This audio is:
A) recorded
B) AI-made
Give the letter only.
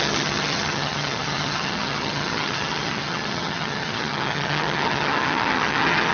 B